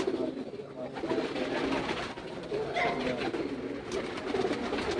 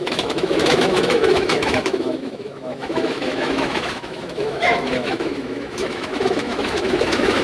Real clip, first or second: first